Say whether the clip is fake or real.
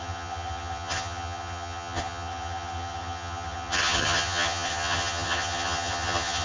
fake